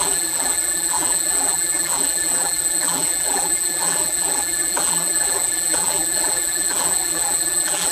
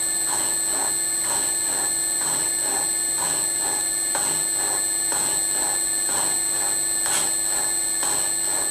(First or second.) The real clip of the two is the second